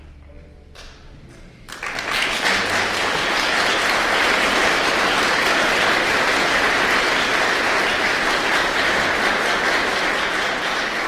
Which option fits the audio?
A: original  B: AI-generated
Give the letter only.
A